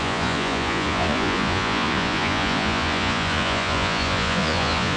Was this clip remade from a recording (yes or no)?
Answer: yes